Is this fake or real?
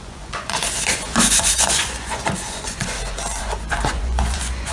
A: fake